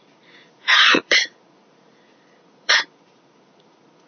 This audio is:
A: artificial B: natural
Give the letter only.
A